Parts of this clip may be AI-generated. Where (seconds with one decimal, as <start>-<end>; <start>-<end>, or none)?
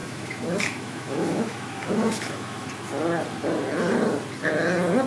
0.0-2.7